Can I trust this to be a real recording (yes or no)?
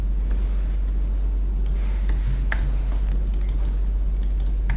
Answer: yes